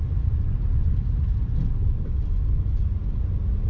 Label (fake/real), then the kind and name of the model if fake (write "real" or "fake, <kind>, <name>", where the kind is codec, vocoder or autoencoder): real